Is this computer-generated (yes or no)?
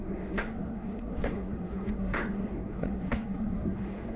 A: yes